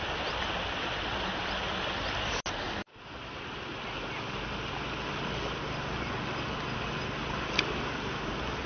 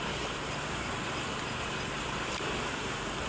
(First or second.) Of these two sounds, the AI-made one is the second